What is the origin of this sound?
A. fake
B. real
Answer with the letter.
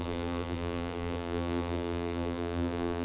A